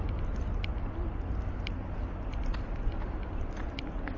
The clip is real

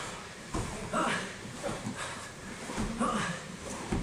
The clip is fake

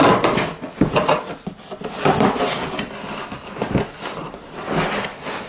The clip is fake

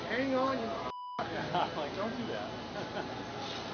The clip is real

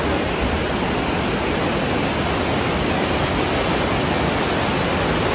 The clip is real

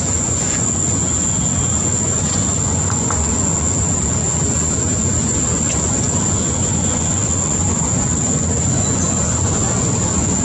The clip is fake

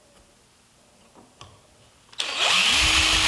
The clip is real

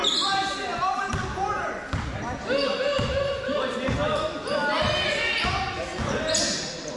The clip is real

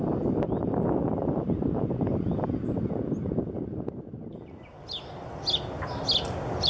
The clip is real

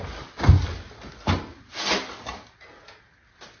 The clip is real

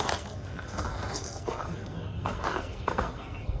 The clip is fake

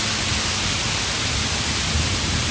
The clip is real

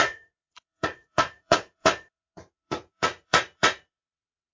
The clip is fake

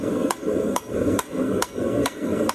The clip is fake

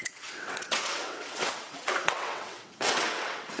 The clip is fake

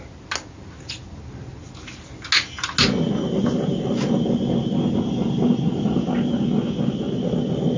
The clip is real